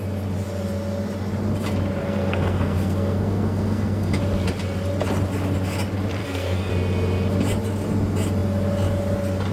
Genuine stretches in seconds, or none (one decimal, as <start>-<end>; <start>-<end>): 0.0-2.0; 4.2-6.2; 6.7-9.5